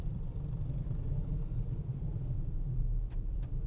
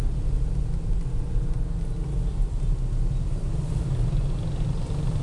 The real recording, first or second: second